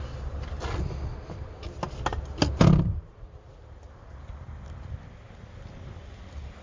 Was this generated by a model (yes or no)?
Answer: no